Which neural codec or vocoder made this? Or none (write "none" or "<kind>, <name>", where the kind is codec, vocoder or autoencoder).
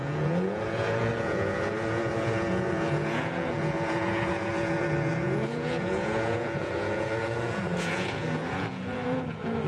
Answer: vocoder, Vocos